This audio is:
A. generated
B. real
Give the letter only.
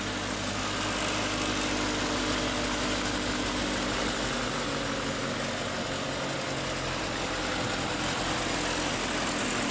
B